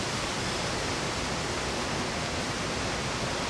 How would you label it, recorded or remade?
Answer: recorded